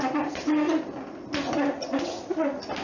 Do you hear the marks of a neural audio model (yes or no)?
no